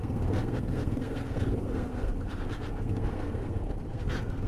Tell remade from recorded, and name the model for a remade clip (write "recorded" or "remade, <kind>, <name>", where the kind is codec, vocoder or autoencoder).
remade, codec, SNAC